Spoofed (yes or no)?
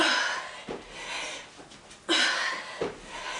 no